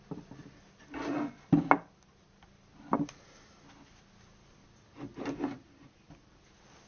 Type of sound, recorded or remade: recorded